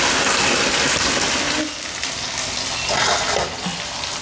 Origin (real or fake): real